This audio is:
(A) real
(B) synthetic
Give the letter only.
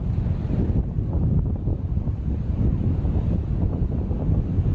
A